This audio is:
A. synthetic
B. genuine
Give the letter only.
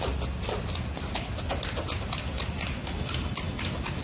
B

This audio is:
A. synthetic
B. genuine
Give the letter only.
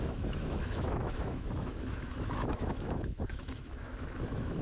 A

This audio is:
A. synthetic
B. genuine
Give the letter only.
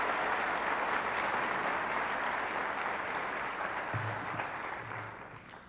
B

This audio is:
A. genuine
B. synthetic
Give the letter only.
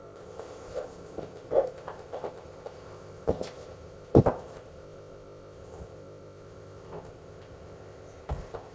B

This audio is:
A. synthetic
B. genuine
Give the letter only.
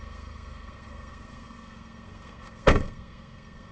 A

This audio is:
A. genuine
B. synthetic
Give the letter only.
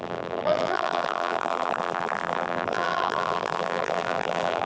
B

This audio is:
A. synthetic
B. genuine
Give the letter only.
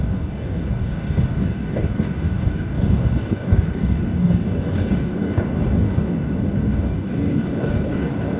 A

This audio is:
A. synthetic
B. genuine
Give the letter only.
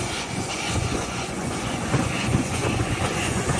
A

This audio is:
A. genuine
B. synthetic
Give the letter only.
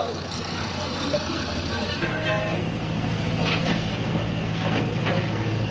B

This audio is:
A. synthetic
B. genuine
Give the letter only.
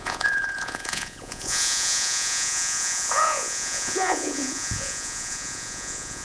A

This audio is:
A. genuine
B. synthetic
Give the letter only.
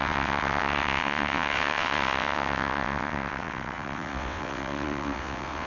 B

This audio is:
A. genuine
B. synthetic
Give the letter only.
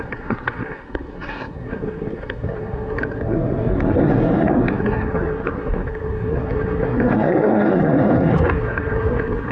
B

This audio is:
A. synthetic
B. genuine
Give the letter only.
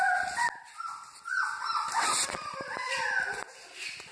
B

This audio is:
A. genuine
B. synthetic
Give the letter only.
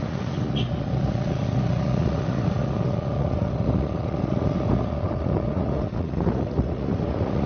B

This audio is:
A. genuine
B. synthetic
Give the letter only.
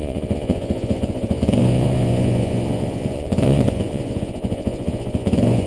B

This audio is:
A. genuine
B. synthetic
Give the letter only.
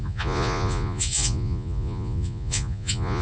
B